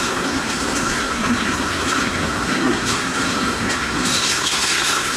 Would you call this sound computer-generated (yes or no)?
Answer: yes